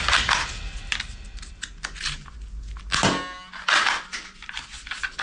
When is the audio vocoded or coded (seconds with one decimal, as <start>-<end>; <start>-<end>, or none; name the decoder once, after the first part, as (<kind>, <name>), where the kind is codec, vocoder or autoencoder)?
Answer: none